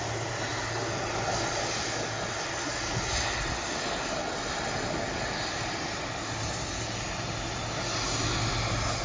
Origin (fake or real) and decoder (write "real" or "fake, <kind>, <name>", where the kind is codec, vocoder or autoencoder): real